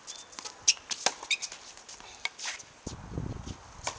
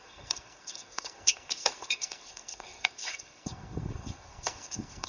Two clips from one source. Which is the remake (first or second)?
second